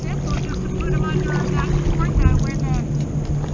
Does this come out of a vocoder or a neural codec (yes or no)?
no